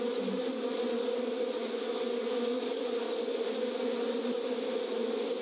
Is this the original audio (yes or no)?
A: yes